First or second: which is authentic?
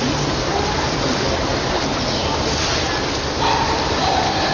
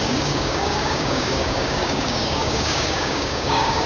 first